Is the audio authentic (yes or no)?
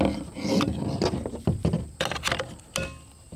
yes